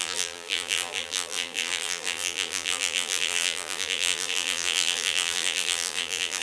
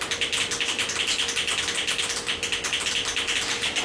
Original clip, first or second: second